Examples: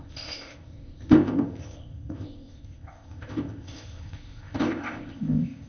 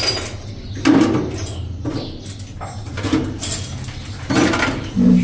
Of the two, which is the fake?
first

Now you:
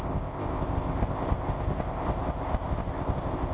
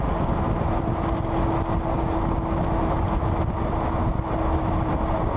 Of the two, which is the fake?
first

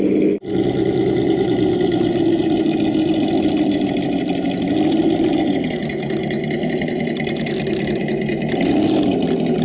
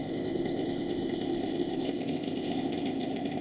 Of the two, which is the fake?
second